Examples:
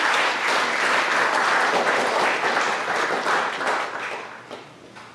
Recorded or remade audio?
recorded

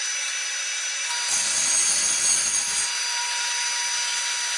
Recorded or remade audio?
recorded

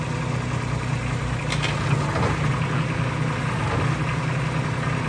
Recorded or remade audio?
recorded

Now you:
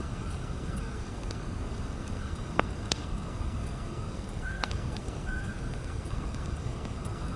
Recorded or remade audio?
remade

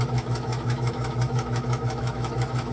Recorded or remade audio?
remade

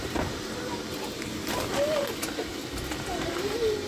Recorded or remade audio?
recorded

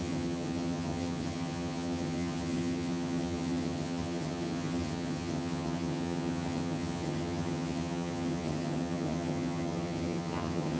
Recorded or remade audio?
remade